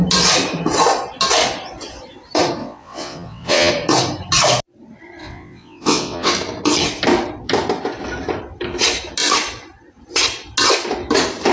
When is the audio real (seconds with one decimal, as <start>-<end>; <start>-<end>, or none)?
0.0-2.6; 3.7-5.2; 6.3-11.5